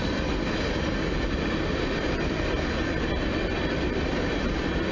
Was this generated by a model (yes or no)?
no